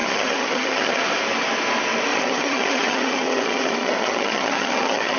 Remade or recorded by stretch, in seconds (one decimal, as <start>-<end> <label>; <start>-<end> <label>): 0.0-1.0 remade; 1.0-2.1 recorded; 2.1-5.2 remade